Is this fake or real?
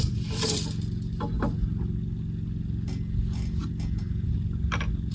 real